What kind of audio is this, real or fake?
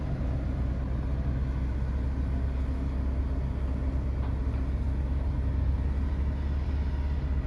real